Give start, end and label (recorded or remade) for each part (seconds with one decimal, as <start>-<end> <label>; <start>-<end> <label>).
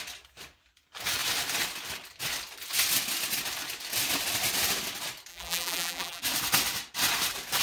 0.0-5.3 recorded; 5.3-6.2 remade; 6.2-7.6 recorded